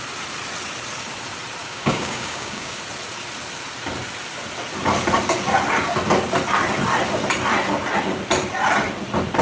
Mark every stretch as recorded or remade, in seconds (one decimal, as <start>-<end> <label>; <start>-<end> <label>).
0.0-1.6 recorded; 1.6-2.8 remade; 2.8-9.4 recorded